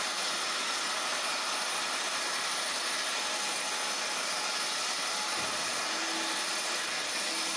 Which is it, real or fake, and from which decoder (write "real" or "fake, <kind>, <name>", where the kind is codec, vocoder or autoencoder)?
real